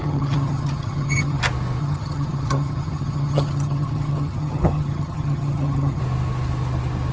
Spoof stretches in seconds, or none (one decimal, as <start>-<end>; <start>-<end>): 0.0-1.4; 1.8-6.0